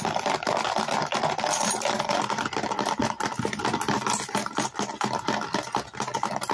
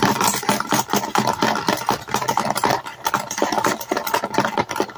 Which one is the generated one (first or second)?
second